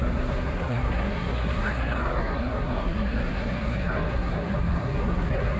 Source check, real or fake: fake